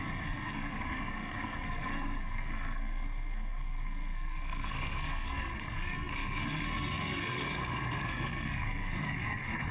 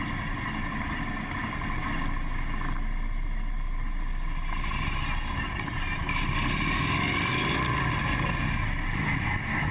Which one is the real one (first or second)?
second